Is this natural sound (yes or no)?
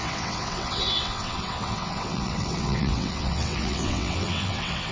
no